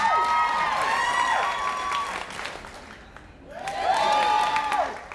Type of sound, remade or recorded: recorded